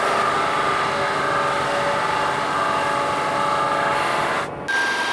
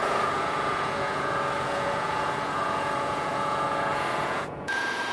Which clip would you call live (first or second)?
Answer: first